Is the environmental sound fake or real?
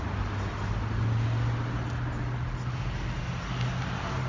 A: real